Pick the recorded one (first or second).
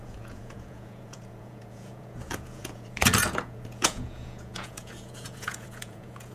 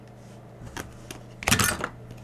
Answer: second